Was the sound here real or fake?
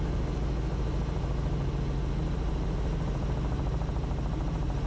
real